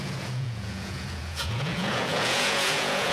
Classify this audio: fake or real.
fake